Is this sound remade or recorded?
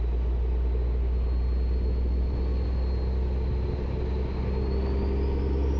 recorded